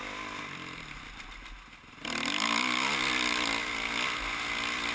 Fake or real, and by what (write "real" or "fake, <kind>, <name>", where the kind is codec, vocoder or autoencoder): real